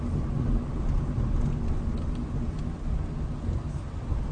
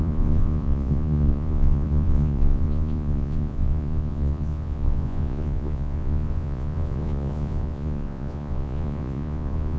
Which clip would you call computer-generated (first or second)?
second